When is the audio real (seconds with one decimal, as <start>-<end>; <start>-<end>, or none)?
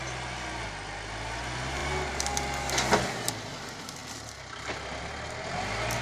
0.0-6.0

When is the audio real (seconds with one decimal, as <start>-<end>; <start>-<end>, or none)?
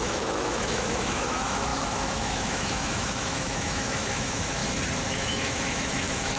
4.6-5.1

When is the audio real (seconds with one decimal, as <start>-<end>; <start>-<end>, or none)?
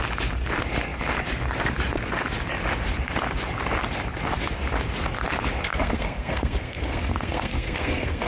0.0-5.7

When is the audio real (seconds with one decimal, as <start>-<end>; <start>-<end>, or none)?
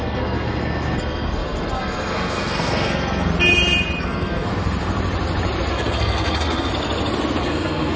3.3-4.0; 4.5-5.7; 6.7-7.4